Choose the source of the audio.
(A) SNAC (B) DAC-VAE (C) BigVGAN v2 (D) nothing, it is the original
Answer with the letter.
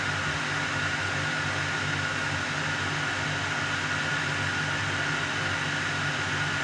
D